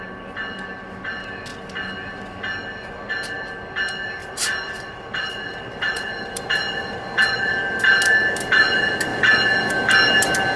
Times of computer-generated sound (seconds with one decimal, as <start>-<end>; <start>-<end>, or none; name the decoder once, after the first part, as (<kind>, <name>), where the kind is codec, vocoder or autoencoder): 4.2-7.5 (vocoder, BigVGAN v2)